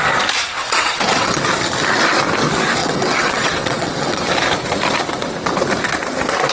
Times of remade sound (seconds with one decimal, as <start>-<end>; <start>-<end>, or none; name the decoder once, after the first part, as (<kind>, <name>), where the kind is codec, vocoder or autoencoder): 0.6-1.4 (vocoder, WaveNeXt); 2.8-4.3